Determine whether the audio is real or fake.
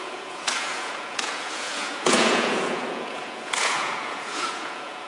fake